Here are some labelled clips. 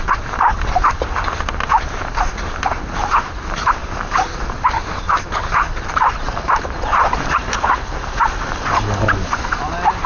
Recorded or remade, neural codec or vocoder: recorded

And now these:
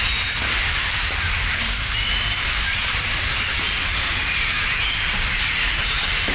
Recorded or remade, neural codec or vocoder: remade, vocoder, BigVGAN v2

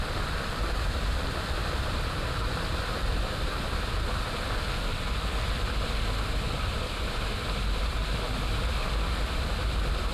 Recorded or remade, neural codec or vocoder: remade, vocoder, BigVGAN v2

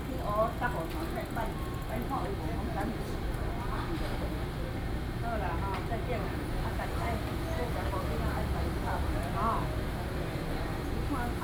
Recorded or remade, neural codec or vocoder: recorded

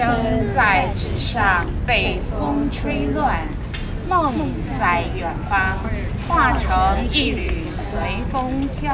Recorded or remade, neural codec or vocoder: recorded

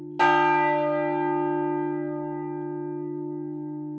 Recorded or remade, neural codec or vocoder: recorded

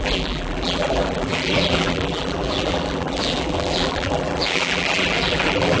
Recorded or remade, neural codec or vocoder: remade, vocoder, BigVGAN v2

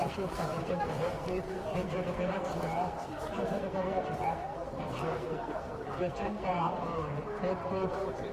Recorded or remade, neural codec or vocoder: remade, codec, SNAC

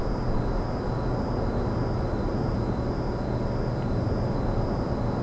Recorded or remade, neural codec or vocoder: recorded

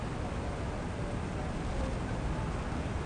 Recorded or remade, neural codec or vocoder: recorded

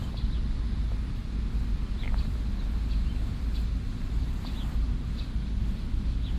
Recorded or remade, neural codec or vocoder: recorded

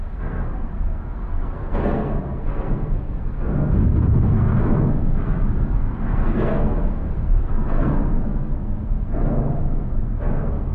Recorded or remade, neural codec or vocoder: remade, codec, SNAC